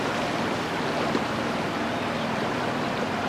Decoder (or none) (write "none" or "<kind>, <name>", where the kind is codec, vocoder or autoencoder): none